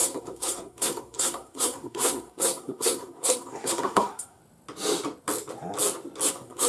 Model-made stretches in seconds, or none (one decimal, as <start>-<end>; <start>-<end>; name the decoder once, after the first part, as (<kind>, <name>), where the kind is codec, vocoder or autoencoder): 0.0-4.4 (codec, SNAC); 6.3-6.7